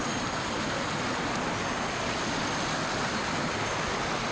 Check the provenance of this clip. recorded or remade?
recorded